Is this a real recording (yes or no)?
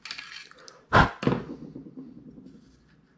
yes